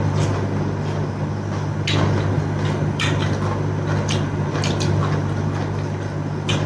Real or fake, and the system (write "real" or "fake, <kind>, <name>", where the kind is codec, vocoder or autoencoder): real